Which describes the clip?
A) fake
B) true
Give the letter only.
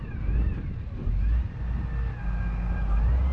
B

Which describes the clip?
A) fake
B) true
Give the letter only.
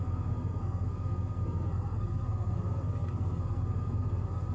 A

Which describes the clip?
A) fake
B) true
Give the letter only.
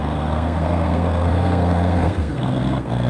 A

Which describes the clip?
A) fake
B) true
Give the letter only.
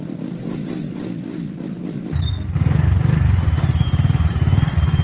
B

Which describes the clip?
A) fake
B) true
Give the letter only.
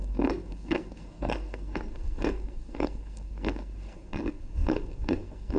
A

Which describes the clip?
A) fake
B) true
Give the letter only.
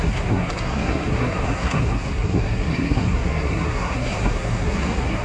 A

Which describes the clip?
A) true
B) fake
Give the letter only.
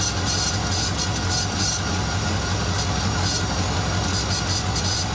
A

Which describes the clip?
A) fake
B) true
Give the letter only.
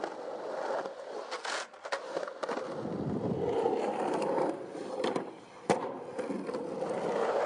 B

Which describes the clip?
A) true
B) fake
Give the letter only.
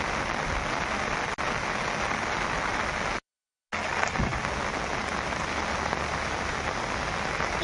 A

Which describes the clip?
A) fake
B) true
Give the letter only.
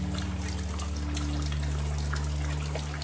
B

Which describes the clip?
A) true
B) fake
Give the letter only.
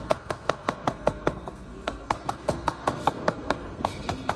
B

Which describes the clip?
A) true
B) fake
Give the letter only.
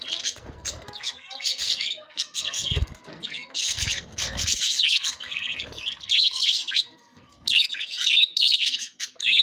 B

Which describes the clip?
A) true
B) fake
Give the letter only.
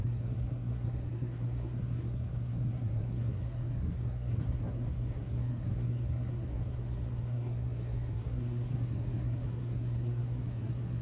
B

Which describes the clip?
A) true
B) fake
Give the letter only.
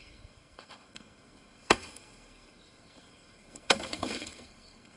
B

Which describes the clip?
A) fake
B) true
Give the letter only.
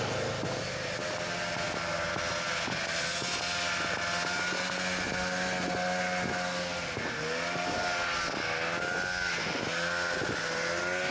B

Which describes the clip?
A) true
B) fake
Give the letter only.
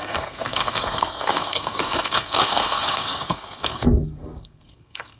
B